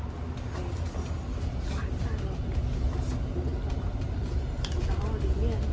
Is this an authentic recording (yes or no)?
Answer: yes